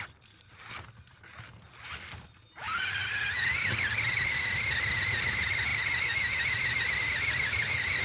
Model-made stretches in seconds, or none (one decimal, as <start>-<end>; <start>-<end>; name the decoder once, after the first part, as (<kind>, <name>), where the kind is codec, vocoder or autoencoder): none